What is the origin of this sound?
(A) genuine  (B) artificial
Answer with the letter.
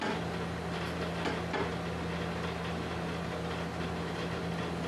A